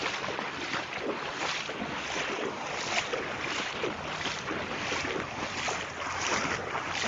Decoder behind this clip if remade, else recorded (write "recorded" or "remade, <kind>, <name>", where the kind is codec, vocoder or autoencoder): recorded